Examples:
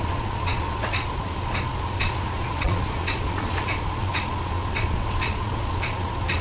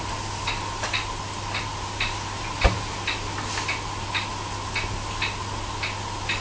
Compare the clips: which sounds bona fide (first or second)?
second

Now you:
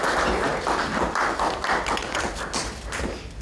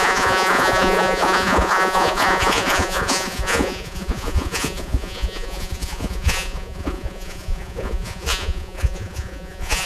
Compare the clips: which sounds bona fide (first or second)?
first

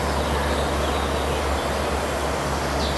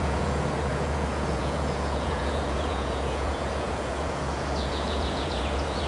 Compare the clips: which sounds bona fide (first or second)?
first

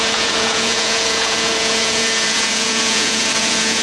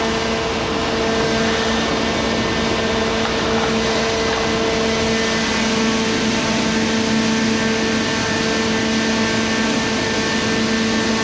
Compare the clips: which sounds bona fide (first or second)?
second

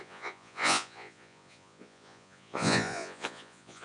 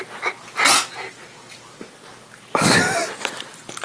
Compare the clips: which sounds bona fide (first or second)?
second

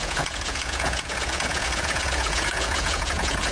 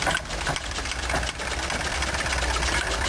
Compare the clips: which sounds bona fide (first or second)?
second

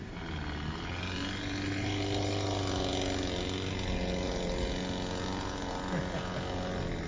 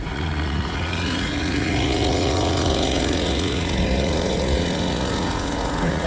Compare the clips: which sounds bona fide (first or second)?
first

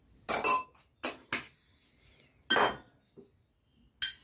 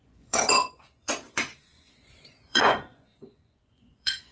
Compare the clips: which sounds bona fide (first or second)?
first